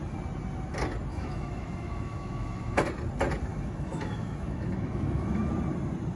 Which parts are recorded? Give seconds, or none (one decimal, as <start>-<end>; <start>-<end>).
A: 0.0-1.1; 2.8-3.5; 5.5-6.2